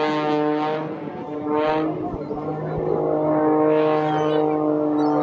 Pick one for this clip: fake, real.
real